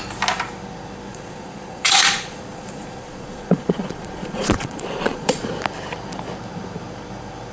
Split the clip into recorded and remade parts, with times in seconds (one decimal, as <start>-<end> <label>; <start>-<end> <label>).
0.0-1.1 recorded; 1.1-5.4 remade; 5.4-7.5 recorded